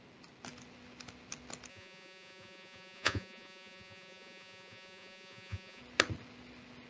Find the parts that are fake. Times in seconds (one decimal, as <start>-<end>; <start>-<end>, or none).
1.7-5.8